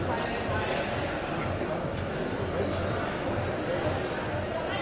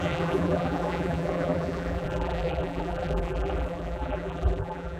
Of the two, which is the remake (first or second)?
second